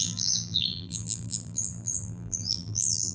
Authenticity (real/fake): fake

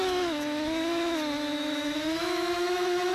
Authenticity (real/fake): fake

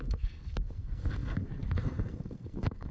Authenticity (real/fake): fake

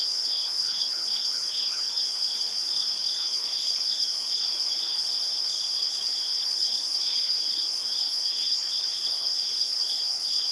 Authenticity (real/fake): fake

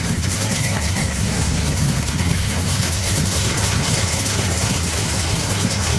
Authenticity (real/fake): fake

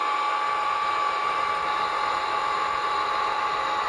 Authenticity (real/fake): real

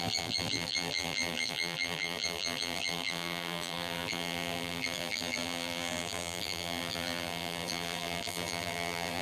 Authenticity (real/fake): fake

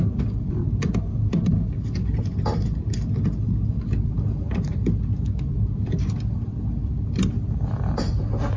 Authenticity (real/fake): real